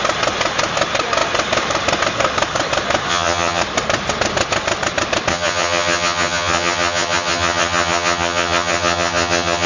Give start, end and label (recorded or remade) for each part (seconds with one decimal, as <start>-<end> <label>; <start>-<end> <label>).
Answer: 0.0-3.1 recorded; 3.1-3.6 remade; 3.6-5.3 recorded; 5.3-9.7 remade